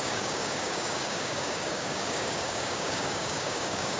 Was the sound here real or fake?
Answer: fake